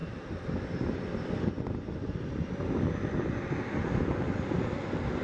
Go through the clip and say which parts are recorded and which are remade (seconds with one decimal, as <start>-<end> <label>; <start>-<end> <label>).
0.0-5.2 recorded